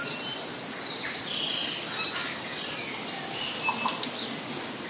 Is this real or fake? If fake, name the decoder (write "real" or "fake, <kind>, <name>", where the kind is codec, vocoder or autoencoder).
real